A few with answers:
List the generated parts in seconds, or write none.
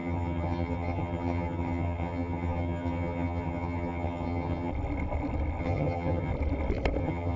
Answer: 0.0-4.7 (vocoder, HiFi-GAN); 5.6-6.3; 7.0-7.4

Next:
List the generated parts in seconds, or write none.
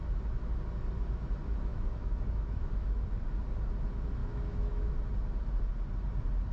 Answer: 1.7-3.1 (autoencoder, DAC-VAE); 4.2-4.9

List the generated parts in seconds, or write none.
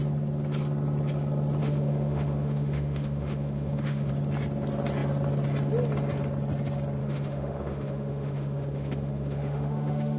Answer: 1.6-4.1 (autoencoder, DAC-VAE); 7.0-10.2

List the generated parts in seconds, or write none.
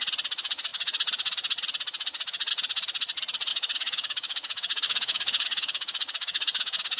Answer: 3.5-7.0 (codec, DAC)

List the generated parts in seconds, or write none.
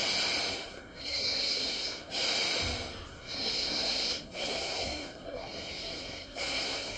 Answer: 0.5-2.1 (codec, SNAC); 3.1-7.0